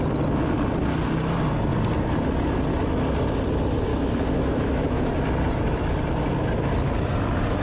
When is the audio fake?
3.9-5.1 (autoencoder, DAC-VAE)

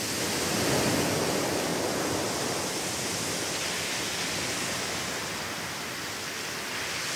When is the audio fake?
none

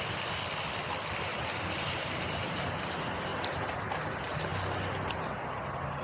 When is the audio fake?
1.3-2.8 (vocoder, BigVGAN v2); 3.3-3.9

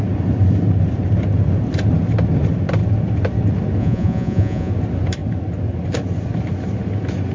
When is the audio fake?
3.8-4.7 (vocoder, Vocos)

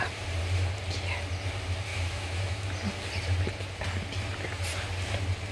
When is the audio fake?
1.9-2.7 (autoencoder, DAC-VAE)

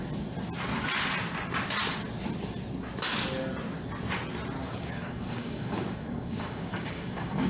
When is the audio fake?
4.6-7.5 (codec, DAC)

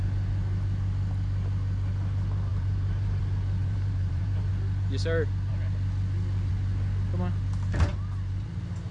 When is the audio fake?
2.5-3.2 (vocoder, BigVGAN v2); 3.6-4.5